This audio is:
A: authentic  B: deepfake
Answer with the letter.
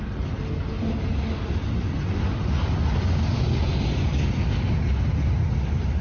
A